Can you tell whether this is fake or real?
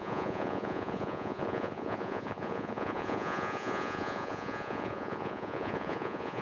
fake